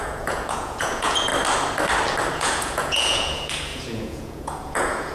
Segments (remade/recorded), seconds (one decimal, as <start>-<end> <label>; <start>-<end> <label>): 0.0-1.3 remade; 1.3-2.3 recorded; 2.3-5.1 remade